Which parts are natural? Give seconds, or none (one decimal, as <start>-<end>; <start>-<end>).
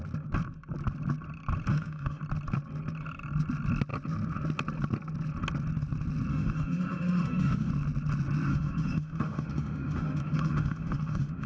0.0-1.7; 2.2-6.3; 7.7-8.5